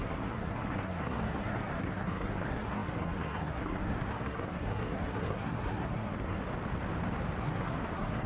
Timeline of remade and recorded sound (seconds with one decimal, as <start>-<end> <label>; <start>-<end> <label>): 0.0-6.4 remade; 6.4-7.4 recorded; 7.4-8.3 remade